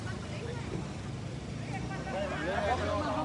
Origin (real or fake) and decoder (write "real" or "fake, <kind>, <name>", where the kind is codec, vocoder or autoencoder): real